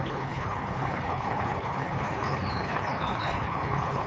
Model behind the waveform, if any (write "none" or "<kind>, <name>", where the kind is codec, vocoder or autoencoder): codec, HILCodec